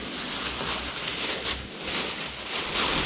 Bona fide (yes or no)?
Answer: yes